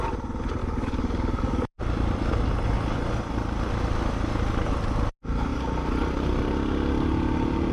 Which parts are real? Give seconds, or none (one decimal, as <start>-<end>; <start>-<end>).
0.0-0.6; 1.8-7.7